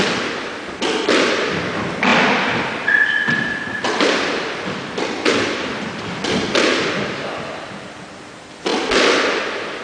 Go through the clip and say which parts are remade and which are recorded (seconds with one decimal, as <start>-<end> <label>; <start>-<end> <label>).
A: 0.0-2.1 recorded; 2.1-6.9 remade; 6.9-9.8 recorded

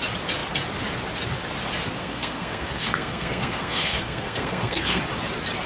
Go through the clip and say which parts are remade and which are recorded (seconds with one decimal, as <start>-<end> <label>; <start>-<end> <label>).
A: 0.0-2.0 recorded; 2.0-5.0 remade; 5.0-5.7 recorded